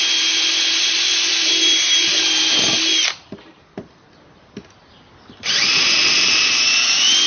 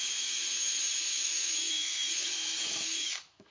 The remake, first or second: second